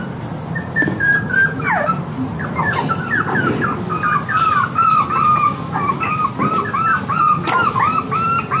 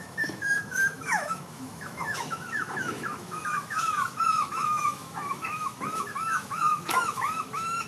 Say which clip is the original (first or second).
first